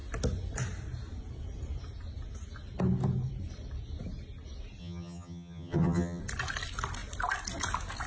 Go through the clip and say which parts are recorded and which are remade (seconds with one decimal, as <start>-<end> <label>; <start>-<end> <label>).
0.0-4.8 recorded; 4.8-6.2 remade; 6.2-8.1 recorded